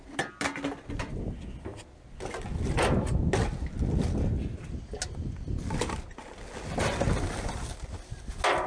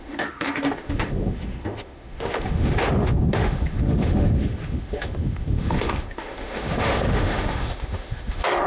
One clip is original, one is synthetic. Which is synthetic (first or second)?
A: second